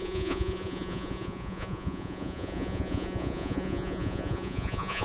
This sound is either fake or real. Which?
fake